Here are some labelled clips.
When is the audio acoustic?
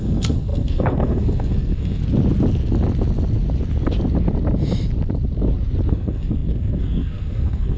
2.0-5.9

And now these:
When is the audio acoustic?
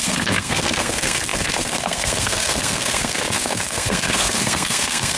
none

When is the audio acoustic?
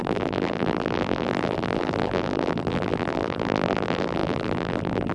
none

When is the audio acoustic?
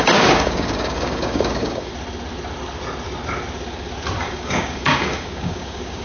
1.9-4.2